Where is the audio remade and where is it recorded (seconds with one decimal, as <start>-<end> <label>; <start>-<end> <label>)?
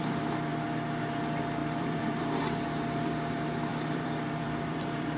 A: 0.0-1.6 recorded; 1.6-2.4 remade; 2.4-3.7 recorded; 3.7-5.2 remade